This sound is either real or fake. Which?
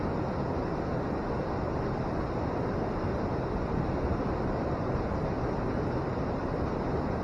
real